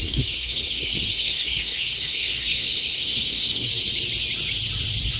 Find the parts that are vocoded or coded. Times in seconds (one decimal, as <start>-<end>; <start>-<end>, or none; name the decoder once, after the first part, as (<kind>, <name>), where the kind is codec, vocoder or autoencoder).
0.0-3.7 (codec, SNAC)